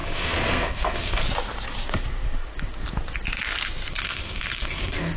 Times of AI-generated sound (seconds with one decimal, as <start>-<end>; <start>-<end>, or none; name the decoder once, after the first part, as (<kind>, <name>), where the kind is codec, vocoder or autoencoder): 0.0-1.2 (codec, SNAC); 3.9-5.2